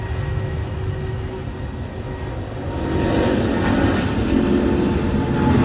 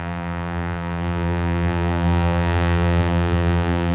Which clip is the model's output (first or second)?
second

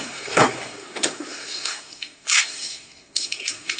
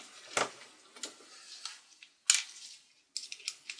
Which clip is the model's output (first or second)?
first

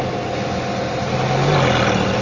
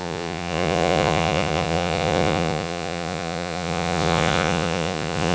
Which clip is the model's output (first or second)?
second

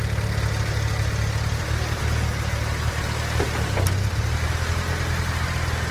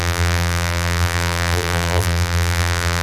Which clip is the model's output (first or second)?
second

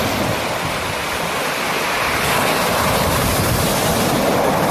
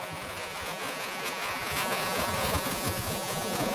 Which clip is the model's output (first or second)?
second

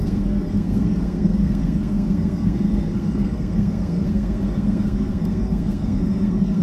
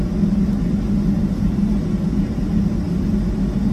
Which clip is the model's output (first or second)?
first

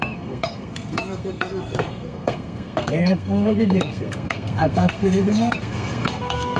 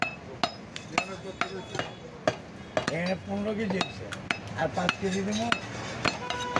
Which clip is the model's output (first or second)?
first